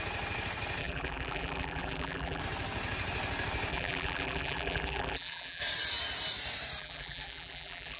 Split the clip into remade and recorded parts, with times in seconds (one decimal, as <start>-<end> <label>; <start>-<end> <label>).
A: 0.0-0.8 recorded; 0.8-2.4 remade; 2.4-3.7 recorded; 3.7-5.6 remade; 5.6-6.8 recorded; 6.8-8.0 remade